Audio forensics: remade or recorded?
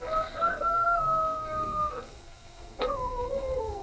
remade